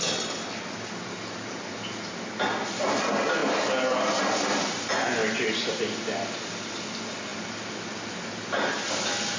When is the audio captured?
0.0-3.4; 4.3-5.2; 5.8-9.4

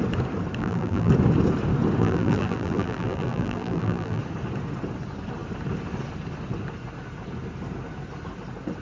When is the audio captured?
0.0-0.6; 1.1-2.0; 4.2-8.8